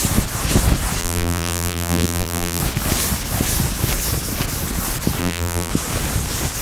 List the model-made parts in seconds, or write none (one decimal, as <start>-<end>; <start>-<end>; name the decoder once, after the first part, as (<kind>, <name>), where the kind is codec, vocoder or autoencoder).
1.0-2.6 (vocoder, BigVGAN v2); 5.2-5.7